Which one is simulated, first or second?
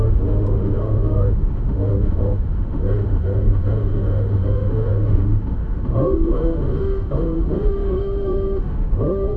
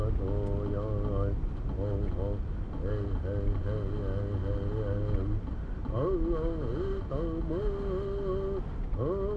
first